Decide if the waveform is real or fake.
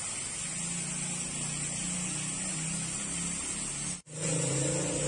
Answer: real